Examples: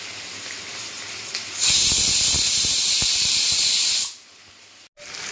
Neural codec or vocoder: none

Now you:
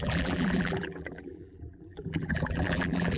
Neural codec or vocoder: vocoder, BigVGAN v2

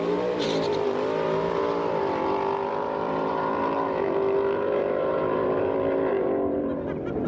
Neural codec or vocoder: vocoder, BigVGAN v2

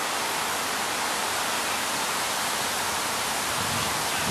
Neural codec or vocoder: none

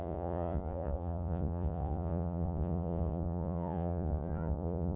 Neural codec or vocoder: vocoder, Vocos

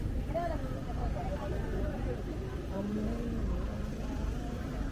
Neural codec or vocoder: vocoder, BigVGAN v2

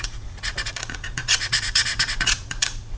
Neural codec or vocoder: vocoder, Vocos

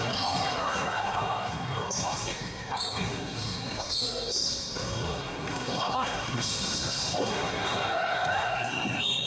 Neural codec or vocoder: codec, SNAC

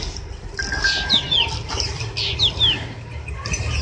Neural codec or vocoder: none